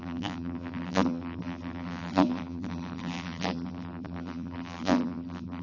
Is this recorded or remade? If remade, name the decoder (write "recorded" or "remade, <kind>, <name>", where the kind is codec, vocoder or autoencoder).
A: remade, vocoder, BigVGAN v2